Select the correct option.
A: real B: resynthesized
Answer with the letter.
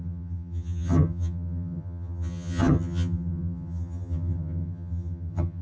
B